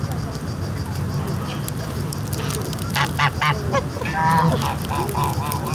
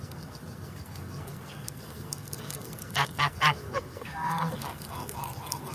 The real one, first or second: first